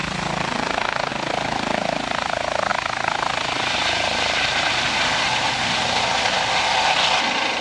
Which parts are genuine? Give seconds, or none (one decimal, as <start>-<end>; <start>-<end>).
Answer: 0.0-7.6